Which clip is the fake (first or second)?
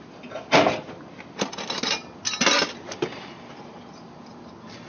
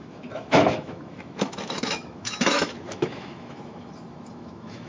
second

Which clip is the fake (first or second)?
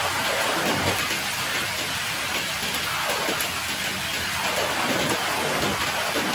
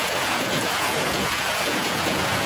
second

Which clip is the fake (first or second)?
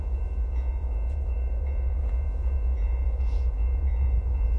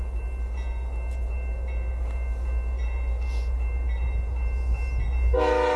first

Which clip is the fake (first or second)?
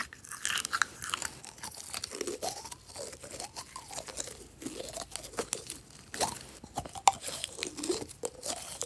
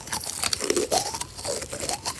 second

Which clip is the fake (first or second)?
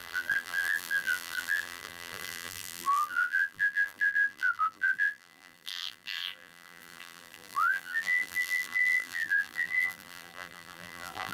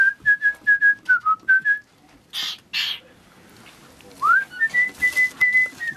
first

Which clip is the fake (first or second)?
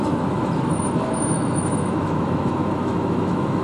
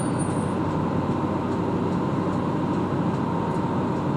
first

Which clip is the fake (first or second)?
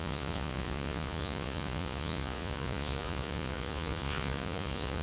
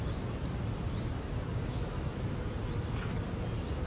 first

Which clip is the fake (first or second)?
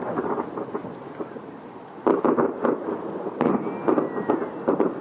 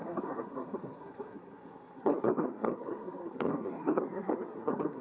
second